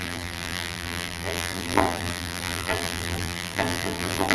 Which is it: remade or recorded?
remade